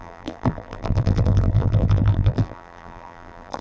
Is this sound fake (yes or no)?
yes